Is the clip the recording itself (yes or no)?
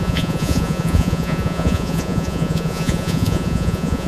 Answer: no